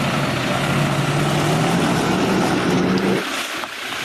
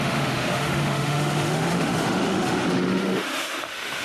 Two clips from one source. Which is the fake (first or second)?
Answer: second